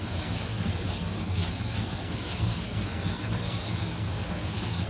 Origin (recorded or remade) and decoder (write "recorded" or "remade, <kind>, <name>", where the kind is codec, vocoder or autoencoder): remade, codec, SNAC